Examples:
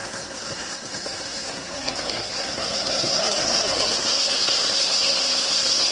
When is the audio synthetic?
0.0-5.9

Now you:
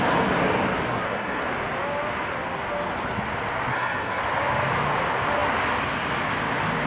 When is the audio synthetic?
0.9-1.4; 3.7-4.2

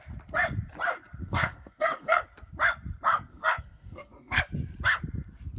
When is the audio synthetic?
1.2-2.2; 3.3-4.4

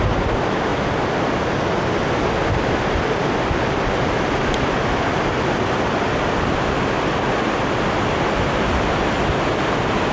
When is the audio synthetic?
none